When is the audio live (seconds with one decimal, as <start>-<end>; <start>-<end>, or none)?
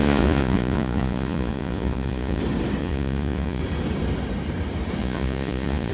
2.4-2.8; 3.6-5.0